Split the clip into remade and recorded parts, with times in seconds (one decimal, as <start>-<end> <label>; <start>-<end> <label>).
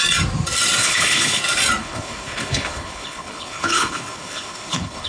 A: 0.0-0.8 recorded; 0.8-1.4 remade; 1.4-1.8 recorded; 1.8-5.1 remade